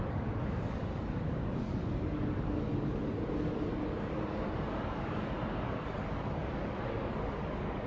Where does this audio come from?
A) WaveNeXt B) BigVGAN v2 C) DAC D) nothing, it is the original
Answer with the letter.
C